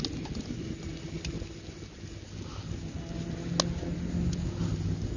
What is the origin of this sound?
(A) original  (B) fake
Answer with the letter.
A